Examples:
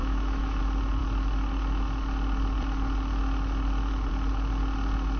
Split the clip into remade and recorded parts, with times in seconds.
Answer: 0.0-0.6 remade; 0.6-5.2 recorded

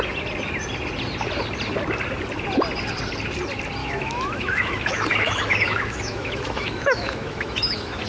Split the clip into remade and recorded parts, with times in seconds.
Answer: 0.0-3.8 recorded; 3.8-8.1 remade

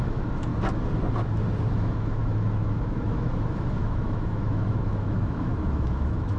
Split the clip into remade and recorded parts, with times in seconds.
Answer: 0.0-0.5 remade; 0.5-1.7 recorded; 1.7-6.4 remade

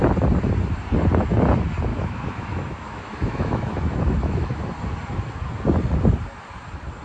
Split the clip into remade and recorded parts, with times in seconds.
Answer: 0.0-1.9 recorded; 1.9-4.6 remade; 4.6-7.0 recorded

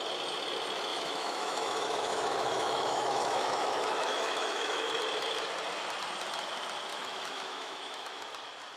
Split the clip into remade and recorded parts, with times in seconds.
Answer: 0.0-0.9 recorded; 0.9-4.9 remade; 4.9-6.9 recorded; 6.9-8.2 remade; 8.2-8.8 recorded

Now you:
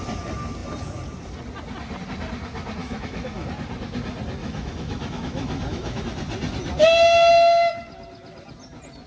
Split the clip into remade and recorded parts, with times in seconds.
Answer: 0.0-2.8 recorded; 2.8-3.5 remade; 3.5-4.4 recorded; 4.4-6.0 remade; 6.0-9.1 recorded

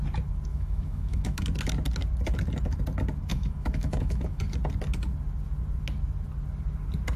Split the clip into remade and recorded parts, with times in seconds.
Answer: 0.0-0.5 recorded; 0.5-1.4 remade; 1.4-3.3 recorded; 3.3-4.4 remade; 4.4-7.2 recorded

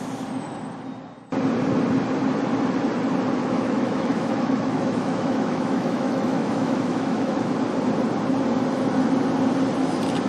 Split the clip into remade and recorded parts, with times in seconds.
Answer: 0.0-3.4 recorded; 3.4-7.5 remade; 7.5-10.3 recorded